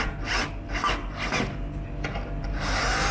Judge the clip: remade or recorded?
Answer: recorded